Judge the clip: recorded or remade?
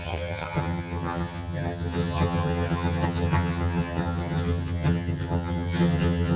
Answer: remade